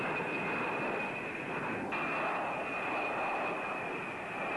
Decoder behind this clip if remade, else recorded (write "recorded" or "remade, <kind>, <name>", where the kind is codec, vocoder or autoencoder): recorded